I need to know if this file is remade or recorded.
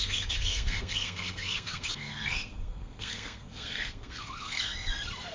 remade